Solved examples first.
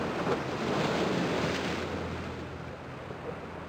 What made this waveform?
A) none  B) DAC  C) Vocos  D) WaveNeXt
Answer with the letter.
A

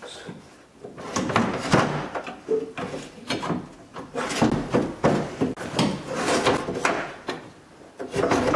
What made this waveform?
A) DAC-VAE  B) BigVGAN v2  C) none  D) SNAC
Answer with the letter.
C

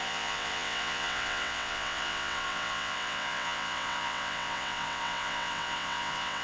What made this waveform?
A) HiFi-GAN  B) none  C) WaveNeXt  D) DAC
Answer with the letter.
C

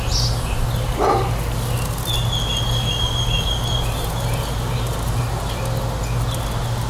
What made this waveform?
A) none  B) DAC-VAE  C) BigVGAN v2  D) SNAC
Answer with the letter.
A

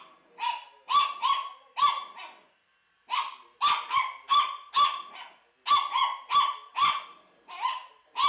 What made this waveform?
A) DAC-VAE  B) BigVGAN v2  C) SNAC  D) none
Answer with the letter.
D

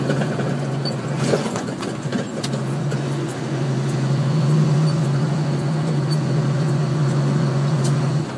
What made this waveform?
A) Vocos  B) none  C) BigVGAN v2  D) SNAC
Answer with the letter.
A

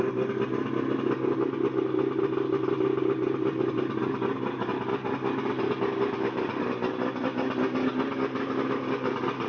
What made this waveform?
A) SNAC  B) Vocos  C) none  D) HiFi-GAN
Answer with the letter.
C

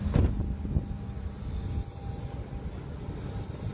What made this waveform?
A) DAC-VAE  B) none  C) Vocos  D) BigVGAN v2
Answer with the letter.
B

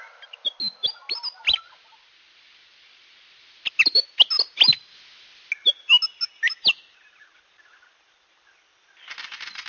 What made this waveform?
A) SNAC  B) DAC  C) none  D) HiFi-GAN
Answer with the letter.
C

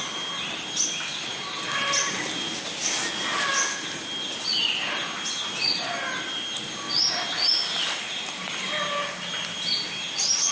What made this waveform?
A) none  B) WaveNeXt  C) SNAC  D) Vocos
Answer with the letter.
A